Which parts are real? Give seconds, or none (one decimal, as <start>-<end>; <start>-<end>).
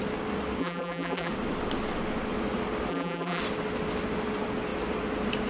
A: 0.0-0.6; 1.3-2.9; 3.4-5.5